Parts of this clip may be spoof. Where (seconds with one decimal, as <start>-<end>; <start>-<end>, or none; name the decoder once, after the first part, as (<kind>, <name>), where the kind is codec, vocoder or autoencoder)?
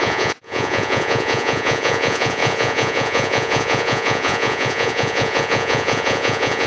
0.0-6.7 (vocoder, Vocos)